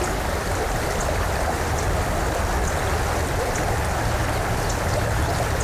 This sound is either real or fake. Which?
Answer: real